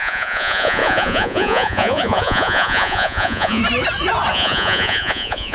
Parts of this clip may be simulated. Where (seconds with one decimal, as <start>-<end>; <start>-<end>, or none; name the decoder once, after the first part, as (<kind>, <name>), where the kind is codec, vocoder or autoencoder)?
0.0-3.6 (vocoder, Vocos); 4.3-5.5